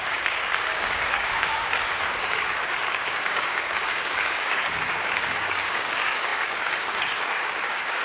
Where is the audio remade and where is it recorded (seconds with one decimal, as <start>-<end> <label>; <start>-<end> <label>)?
0.0-8.0 remade